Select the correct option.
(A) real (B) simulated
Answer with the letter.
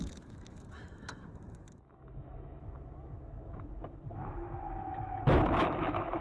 B